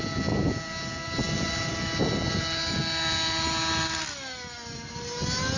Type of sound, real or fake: real